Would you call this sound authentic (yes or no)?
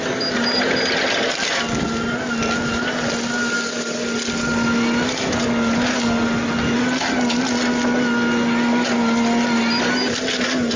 yes